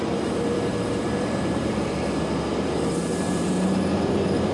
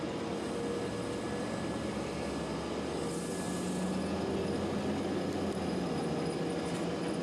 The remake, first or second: first